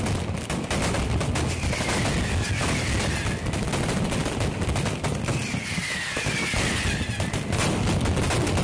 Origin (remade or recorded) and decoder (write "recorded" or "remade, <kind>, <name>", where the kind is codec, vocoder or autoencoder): recorded